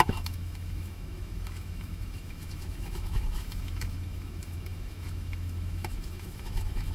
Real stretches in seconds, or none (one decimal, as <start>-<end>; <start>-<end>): none